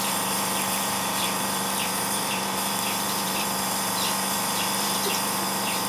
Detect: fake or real fake